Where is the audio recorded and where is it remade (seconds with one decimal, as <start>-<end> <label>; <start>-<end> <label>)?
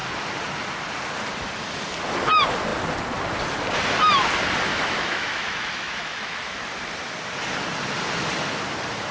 0.0-4.7 recorded; 4.7-6.5 remade; 6.5-9.1 recorded